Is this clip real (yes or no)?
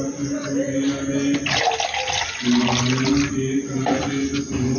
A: yes